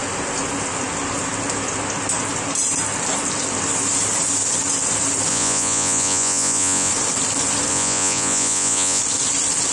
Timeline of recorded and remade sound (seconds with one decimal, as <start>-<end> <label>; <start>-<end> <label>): 0.0-5.3 recorded; 5.3-6.9 remade; 6.9-7.7 recorded; 7.7-9.0 remade; 9.0-9.7 recorded